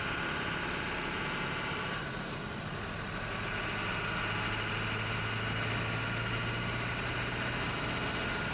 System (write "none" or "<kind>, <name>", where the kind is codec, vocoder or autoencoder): none